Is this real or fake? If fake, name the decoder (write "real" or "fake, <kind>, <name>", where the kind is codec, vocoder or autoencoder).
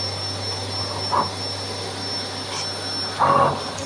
real